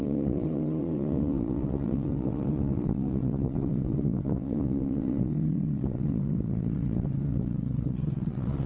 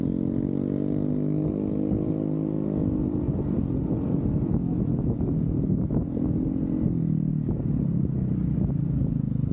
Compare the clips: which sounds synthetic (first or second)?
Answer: first